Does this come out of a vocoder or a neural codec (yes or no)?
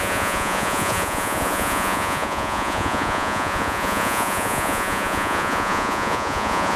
yes